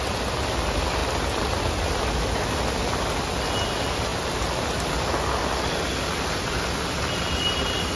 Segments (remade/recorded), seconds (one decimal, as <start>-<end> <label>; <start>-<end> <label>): 0.0-7.9 recorded